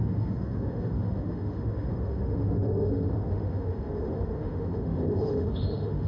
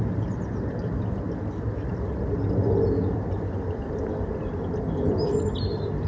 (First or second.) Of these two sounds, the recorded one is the second